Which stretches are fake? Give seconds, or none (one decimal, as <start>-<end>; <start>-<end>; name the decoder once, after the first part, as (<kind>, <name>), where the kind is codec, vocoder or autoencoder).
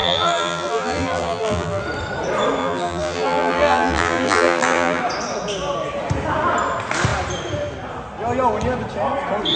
0.0-1.8 (vocoder, BigVGAN v2); 2.6-5.0